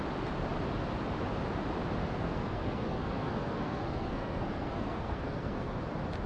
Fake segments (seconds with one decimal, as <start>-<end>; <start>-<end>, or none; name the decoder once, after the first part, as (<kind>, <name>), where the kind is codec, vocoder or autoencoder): 2.0-5.8 (codec, SNAC)